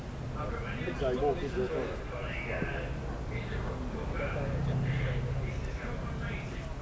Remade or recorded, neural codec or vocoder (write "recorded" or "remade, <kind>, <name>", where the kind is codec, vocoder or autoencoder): recorded